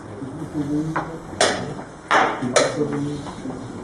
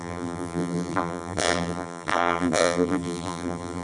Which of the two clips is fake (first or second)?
second